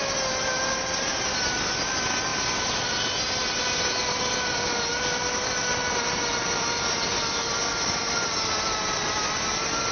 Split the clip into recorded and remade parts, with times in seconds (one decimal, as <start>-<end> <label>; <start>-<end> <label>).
0.0-9.9 recorded